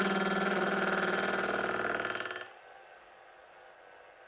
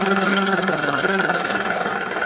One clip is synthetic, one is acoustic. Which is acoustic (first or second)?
first